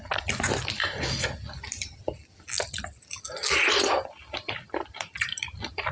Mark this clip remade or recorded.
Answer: recorded